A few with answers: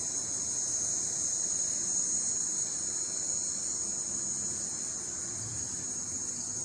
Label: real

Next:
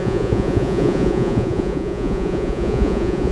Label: fake